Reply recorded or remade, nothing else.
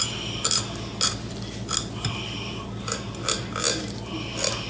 recorded